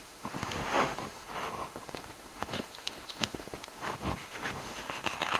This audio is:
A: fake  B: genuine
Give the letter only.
A